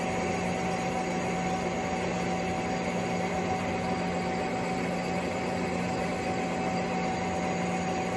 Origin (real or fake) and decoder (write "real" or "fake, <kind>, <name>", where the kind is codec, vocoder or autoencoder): real